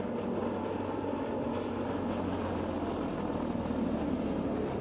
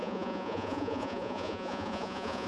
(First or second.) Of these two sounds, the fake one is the second